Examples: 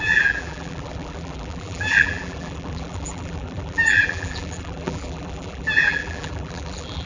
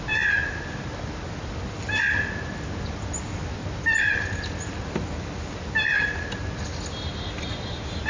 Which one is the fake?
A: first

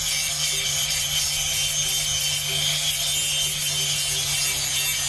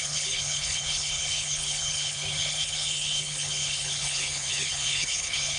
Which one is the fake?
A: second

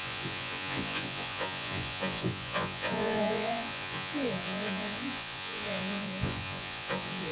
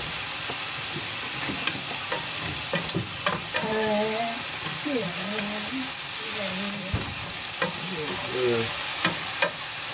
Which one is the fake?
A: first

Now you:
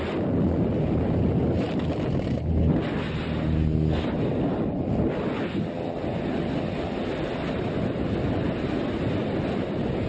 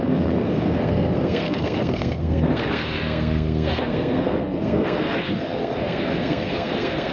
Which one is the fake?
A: second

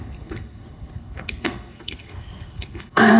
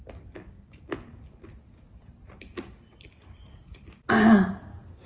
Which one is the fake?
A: first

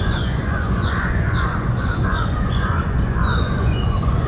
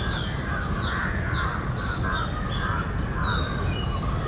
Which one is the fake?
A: first